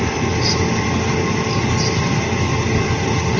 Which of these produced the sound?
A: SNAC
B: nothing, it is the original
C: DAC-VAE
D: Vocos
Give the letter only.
B